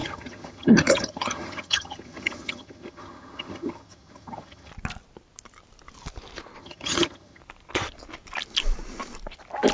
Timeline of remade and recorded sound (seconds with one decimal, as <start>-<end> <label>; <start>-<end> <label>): 0.0-4.7 remade; 4.7-6.6 recorded; 6.6-7.4 remade; 7.4-9.7 recorded